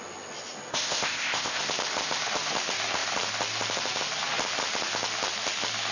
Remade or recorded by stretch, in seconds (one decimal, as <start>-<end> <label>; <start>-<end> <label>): 0.0-0.7 recorded; 0.7-1.6 remade; 1.6-5.9 recorded